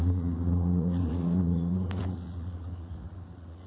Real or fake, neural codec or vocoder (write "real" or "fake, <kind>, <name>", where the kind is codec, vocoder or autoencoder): fake, vocoder, Vocos